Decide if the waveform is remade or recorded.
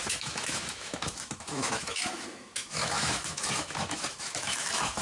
remade